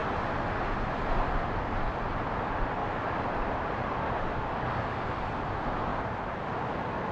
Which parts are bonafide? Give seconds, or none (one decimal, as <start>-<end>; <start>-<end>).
0.0-2.8; 4.5-5.9